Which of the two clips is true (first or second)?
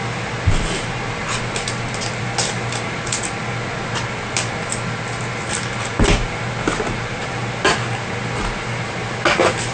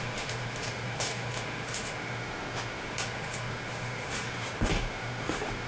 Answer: first